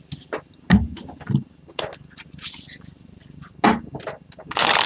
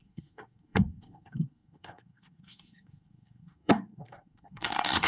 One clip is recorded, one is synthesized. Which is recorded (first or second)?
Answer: first